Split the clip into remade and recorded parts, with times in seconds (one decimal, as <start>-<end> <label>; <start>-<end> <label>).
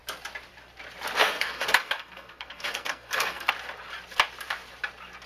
0.0-1.2 recorded; 1.2-3.5 remade; 3.5-5.3 recorded